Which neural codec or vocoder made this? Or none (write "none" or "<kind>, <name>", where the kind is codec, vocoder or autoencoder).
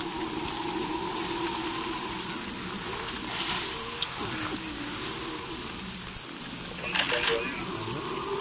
none